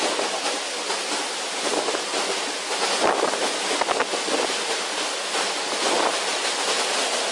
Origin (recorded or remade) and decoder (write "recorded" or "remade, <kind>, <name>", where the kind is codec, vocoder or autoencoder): recorded